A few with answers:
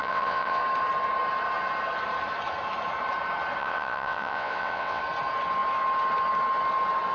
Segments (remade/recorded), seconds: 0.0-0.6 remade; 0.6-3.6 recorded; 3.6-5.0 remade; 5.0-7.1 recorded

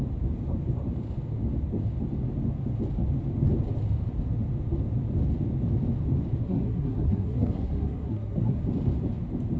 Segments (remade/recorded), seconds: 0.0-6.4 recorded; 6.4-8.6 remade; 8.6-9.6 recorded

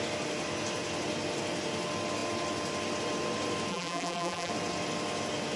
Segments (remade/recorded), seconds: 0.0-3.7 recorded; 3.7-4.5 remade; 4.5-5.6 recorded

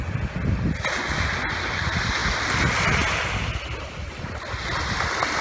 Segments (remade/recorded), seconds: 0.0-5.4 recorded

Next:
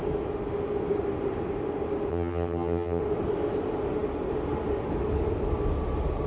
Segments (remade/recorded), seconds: 0.0-2.1 recorded; 2.1-3.0 remade; 3.0-6.3 recorded

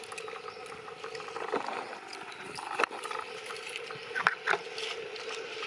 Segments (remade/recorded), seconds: 0.0-5.7 recorded